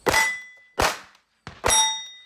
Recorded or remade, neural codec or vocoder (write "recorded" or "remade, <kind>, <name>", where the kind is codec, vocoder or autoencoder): recorded